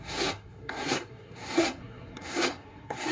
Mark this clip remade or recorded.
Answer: remade